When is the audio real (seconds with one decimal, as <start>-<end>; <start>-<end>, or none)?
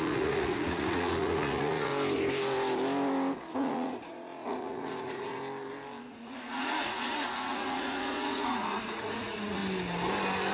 1.9-3.5; 5.4-6.1; 9.6-10.5